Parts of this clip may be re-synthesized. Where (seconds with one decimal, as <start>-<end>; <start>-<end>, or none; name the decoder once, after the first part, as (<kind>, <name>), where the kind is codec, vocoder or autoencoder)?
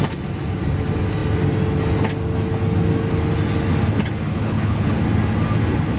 4.3-4.9 (codec, HILCodec)